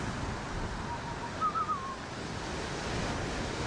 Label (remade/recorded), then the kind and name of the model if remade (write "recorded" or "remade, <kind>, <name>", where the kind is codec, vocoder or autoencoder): recorded